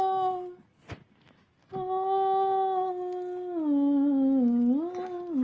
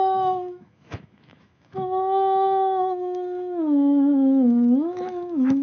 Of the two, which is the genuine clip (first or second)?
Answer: first